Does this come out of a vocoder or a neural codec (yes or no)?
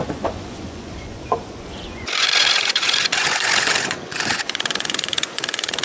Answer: yes